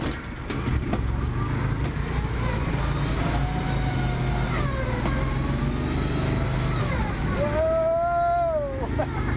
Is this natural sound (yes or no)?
yes